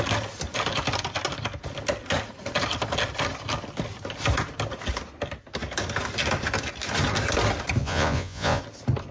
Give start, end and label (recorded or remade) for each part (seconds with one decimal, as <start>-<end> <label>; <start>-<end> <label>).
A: 0.0-7.8 recorded; 7.8-8.6 remade; 8.6-9.1 recorded